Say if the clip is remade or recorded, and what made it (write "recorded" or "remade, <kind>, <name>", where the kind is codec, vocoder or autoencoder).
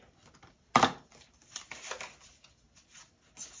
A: recorded